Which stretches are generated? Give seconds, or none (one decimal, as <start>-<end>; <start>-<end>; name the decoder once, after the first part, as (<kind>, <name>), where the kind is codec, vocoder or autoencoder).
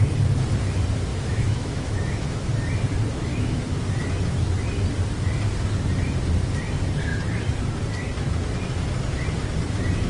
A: 1.1-2.5 (autoencoder, DAC-VAE); 3.3-3.8